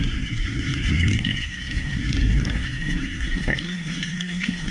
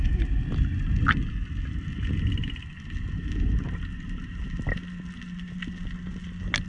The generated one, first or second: first